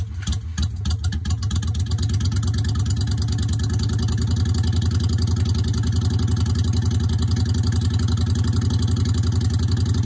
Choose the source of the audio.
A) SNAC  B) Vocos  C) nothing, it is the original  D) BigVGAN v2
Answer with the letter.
C